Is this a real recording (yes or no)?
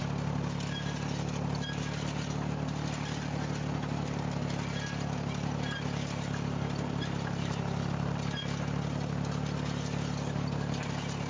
yes